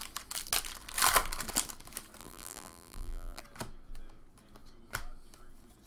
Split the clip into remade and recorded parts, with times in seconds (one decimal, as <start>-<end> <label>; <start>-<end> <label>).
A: 0.0-2.2 recorded; 2.2-3.4 remade; 3.4-5.9 recorded